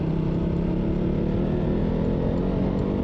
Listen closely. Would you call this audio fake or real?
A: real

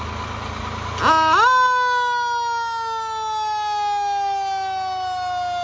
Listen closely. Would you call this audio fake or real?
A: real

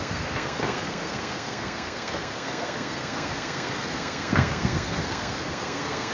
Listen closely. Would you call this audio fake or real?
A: fake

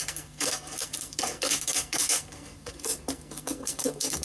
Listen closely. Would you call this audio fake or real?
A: fake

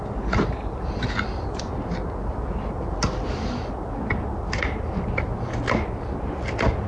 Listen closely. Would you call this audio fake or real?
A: real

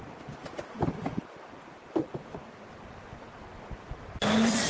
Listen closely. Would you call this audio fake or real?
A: fake